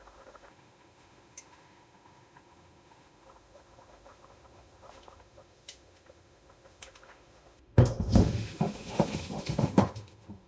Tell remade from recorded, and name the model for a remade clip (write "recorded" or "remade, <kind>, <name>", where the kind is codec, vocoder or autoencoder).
remade, autoencoder, DAC-VAE